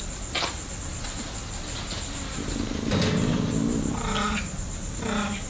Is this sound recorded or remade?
recorded